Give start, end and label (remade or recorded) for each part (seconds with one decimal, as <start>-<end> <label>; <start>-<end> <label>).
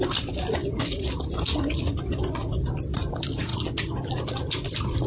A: 0.0-3.5 remade; 3.5-4.1 recorded; 4.1-5.1 remade